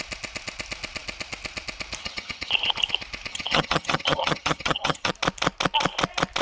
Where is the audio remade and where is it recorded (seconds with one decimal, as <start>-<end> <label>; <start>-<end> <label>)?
0.0-2.0 recorded; 2.0-2.5 remade; 2.5-3.3 recorded; 3.3-5.1 remade; 5.1-6.4 recorded